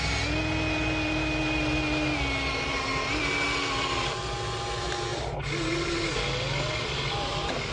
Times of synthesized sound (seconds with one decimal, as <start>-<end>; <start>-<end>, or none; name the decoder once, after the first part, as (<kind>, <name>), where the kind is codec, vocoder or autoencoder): none